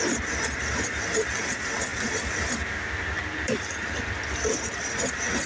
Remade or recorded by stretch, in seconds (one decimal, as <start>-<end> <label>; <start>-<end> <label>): 0.0-5.5 remade